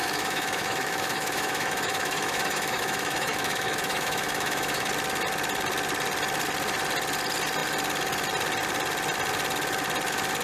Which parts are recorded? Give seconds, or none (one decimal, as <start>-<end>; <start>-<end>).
4.9-10.4